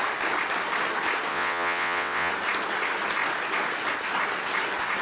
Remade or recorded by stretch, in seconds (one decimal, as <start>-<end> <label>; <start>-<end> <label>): 0.0-1.3 recorded; 1.3-2.3 remade; 2.3-5.0 recorded